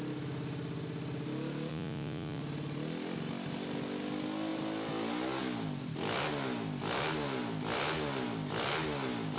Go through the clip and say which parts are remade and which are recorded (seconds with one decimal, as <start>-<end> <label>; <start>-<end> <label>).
0.0-1.7 recorded; 1.7-2.4 remade; 2.4-9.4 recorded